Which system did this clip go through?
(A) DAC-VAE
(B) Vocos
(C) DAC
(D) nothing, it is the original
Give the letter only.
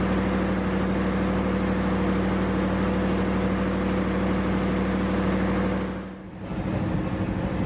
D